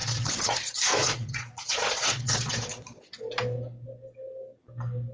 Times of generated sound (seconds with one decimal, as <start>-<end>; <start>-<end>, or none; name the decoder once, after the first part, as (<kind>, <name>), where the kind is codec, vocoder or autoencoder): 0.0-3.1 (vocoder, Vocos)